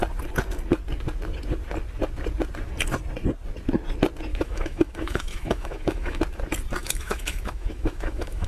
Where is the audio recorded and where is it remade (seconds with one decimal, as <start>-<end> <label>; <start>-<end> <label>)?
0.0-4.3 recorded; 4.3-6.2 remade; 6.2-6.8 recorded; 6.8-8.5 remade

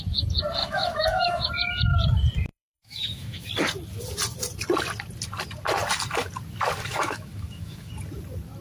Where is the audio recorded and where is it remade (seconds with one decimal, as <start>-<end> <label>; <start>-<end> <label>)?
0.0-0.6 recorded; 0.6-1.5 remade; 1.5-2.5 recorded; 2.5-3.5 remade; 3.5-6.9 recorded; 6.9-7.9 remade; 7.9-8.6 recorded

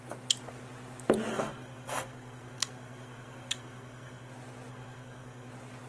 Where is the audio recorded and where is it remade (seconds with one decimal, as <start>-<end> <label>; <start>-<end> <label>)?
0.0-1.3 recorded; 1.3-4.3 remade; 4.3-4.7 recorded; 4.7-5.5 remade; 5.5-5.9 recorded

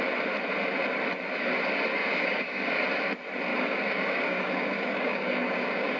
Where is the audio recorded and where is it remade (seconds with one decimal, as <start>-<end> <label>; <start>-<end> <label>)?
0.0-2.0 recorded; 2.0-2.8 remade; 2.8-3.5 recorded; 3.5-6.0 remade